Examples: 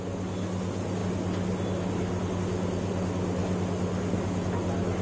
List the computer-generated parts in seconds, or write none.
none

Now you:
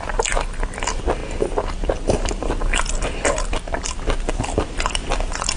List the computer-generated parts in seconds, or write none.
none

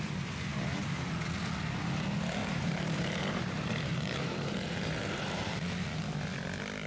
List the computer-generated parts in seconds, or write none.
0.5-1.1; 2.4-6.0